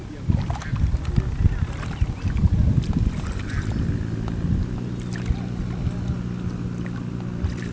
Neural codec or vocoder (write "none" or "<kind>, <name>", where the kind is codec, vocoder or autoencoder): none